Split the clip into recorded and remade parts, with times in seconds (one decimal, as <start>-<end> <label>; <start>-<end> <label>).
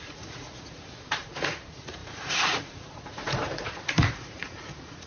0.0-5.1 remade